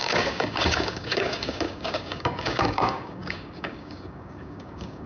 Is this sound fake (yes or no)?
yes